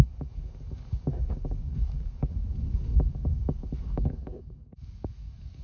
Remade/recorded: remade